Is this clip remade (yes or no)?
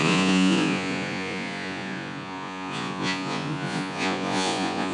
yes